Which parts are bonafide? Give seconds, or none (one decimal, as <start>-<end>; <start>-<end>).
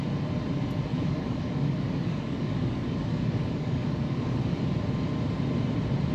0.0-0.9; 4.6-6.1